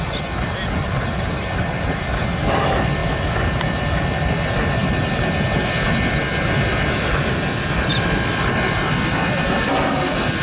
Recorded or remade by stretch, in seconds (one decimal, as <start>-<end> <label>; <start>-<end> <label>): 0.0-10.4 recorded